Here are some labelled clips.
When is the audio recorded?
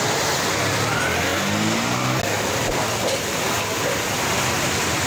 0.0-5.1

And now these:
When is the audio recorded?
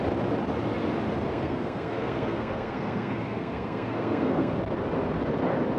0.0-1.3; 4.6-5.8